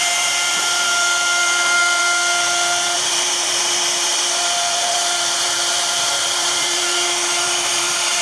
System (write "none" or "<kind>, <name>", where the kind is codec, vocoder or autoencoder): vocoder, BigVGAN v2